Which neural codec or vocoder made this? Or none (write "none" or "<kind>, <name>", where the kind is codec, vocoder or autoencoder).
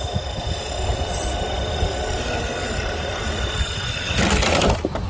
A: none